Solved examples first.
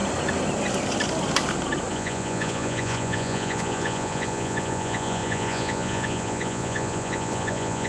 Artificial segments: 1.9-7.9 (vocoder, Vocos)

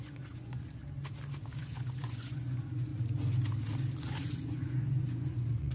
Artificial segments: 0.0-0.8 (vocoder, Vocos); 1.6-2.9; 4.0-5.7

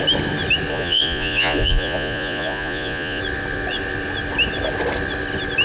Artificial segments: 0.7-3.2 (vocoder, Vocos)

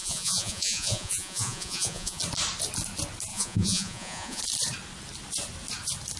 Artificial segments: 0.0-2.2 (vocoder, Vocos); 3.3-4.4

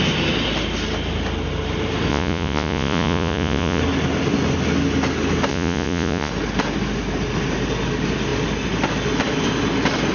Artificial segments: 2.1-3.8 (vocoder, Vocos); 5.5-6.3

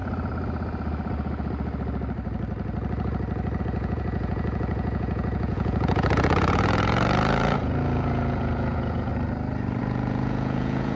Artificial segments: 3.6-9.1 (vocoder, Vocos); 9.8-11.0

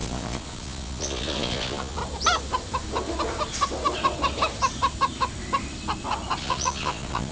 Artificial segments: 0.0-2.0 (vocoder, Vocos); 6.4-7.3